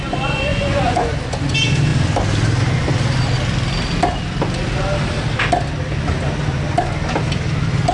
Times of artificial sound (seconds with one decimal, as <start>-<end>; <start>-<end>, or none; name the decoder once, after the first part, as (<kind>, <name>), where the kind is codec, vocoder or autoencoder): 0.5-1.1 (vocoder, Vocos)